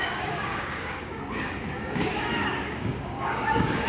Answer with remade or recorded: remade